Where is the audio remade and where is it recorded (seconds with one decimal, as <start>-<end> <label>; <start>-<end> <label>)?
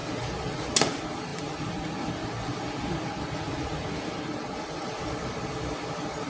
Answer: 0.0-6.3 recorded